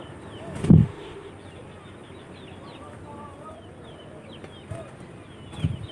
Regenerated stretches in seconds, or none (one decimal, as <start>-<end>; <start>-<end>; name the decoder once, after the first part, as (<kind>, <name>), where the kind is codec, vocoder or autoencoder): 0.6-1.3 (autoencoder, DAC-VAE)